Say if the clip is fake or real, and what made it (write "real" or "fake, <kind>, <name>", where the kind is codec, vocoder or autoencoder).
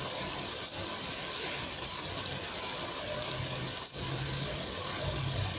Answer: real